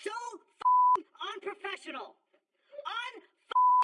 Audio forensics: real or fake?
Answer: fake